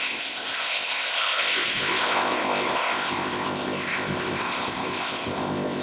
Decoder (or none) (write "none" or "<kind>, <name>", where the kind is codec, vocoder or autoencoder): codec, ZipCodec